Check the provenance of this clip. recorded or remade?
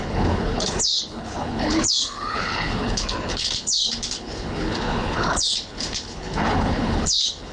remade